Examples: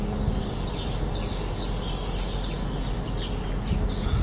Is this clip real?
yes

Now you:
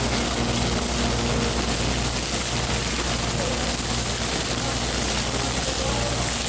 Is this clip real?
yes